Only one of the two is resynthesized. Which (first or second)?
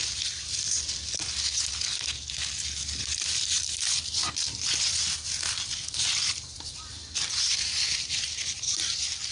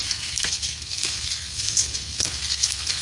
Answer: second